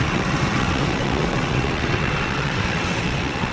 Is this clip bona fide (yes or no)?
no